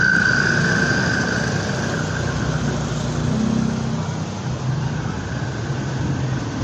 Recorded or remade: recorded